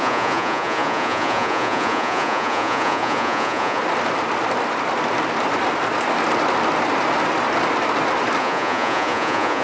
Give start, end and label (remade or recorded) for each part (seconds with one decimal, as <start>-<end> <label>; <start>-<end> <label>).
0.0-3.8 remade; 3.8-8.4 recorded; 8.4-9.6 remade